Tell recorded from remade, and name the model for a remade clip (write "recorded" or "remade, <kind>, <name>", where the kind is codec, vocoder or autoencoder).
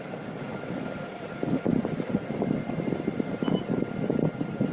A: recorded